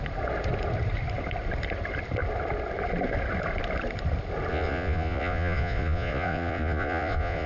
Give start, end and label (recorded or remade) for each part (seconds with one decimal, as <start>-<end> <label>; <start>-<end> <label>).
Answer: 0.0-4.5 recorded; 4.5-7.5 remade